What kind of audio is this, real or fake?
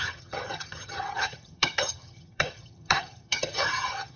fake